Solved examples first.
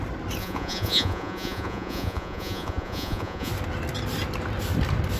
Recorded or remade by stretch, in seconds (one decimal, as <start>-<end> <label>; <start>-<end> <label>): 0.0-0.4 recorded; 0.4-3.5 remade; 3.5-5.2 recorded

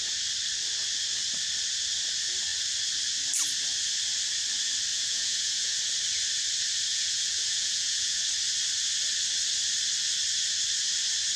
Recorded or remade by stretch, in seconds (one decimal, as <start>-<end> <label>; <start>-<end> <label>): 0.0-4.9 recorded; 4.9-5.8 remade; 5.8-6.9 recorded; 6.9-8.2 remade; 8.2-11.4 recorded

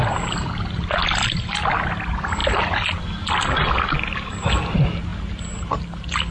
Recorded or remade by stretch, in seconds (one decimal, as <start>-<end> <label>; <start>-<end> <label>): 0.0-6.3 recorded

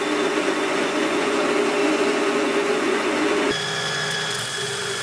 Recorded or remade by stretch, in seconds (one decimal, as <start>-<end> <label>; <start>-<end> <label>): 0.0-0.4 recorded; 0.4-1.4 remade; 1.4-1.8 recorded; 1.8-5.0 remade

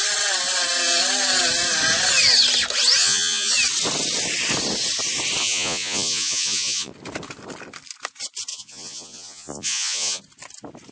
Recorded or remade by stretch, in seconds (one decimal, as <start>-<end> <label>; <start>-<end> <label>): 0.0-3.0 recorded; 3.0-3.5 remade; 3.5-5.4 recorded; 5.4-6.9 remade; 6.9-8.5 recorded; 8.5-10.2 remade; 10.2-10.9 recorded

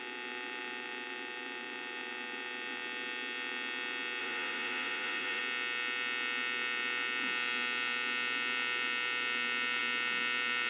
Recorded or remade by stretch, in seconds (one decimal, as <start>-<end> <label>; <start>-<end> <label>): 0.0-4.2 recorded; 4.2-5.4 remade; 5.4-10.7 recorded

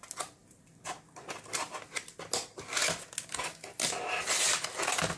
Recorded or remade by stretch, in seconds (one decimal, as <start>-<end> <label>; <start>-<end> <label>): 0.0-5.2 recorded

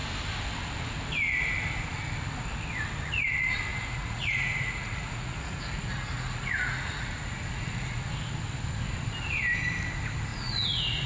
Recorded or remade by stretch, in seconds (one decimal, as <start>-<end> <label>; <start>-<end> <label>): 0.0-3.7 recorded; 3.7-8.1 remade; 8.1-10.3 recorded; 10.3-11.1 remade